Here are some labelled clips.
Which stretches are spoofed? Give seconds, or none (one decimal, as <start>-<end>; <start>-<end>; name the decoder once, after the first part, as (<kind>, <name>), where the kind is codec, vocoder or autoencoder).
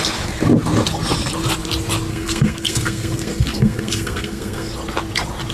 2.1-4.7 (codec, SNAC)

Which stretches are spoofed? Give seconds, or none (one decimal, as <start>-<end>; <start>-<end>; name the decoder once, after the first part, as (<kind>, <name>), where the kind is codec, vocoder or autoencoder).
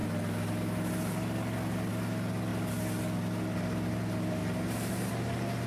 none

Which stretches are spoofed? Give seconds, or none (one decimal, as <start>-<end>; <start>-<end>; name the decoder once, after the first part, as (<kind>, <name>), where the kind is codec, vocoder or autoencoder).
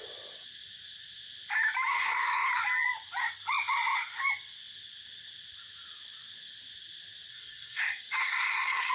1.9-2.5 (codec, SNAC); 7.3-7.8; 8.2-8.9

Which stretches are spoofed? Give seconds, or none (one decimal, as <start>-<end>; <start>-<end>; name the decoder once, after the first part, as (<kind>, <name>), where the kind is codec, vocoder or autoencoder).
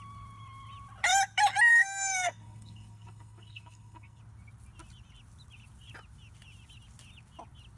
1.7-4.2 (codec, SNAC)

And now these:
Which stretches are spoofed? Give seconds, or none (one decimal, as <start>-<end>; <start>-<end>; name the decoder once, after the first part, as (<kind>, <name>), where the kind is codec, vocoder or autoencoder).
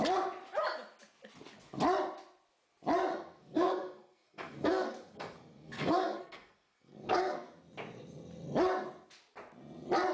3.1-7.6 (codec, SNAC)